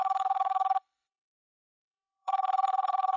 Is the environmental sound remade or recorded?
remade